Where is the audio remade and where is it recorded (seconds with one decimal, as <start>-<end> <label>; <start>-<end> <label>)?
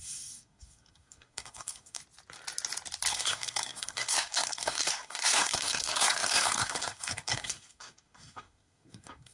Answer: 0.0-2.0 remade; 2.0-3.1 recorded; 3.1-9.3 remade